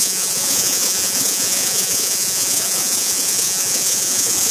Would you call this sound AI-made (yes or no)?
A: yes